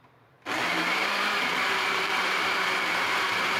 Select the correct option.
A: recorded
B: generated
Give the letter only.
B